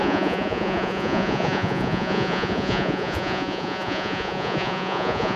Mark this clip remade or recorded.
remade